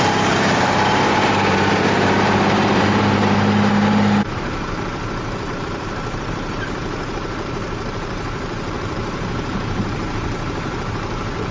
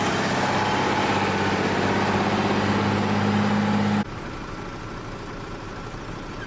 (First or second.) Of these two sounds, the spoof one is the first